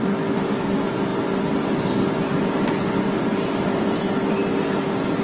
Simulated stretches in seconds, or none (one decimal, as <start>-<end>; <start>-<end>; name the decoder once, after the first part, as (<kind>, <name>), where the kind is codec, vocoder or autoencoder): none